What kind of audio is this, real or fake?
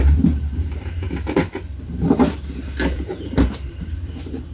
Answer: fake